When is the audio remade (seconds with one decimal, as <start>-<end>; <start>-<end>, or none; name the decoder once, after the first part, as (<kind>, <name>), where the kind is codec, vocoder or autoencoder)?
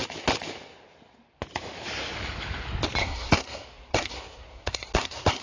3.0-5.4 (codec, SNAC)